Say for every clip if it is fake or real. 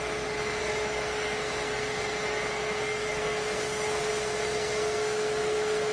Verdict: fake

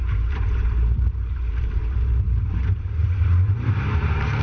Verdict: fake